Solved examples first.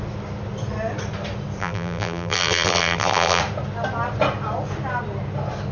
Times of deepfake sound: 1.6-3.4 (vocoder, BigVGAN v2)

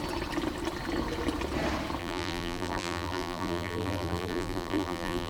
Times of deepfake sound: 2.0-5.3 (vocoder, BigVGAN v2)

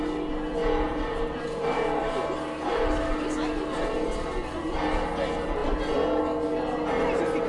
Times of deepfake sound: 0.9-2.2 (vocoder, BigVGAN v2)

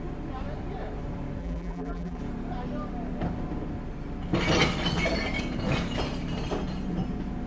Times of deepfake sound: 1.4-2.2 (vocoder, BigVGAN v2)

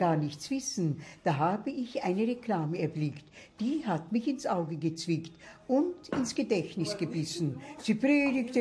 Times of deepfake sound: none

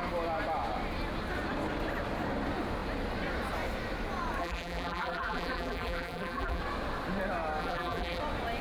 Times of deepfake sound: 4.4-6.6 (vocoder, BigVGAN v2); 7.6-8.2